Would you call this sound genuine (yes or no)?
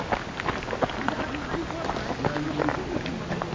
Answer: yes